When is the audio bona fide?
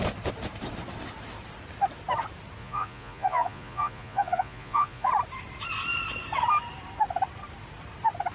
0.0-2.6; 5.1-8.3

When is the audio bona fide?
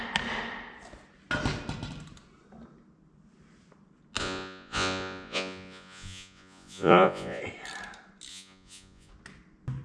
0.0-4.2; 7.4-8.3; 9.1-9.8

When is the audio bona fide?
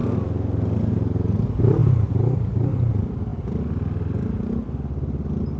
0.0-5.6